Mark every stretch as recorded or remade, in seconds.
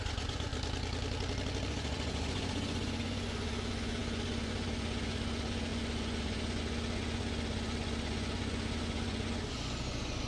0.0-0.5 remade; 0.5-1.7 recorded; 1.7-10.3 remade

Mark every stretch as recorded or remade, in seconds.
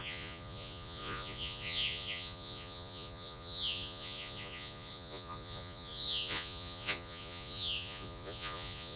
0.0-9.0 remade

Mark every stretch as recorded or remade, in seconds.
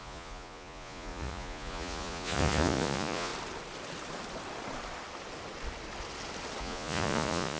0.0-3.3 remade; 3.3-6.6 recorded; 6.6-7.6 remade